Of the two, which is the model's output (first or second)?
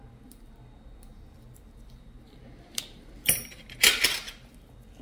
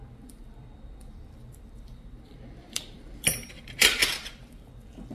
second